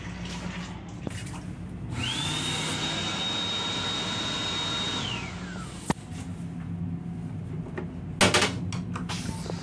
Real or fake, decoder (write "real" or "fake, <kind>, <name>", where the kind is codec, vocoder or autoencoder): real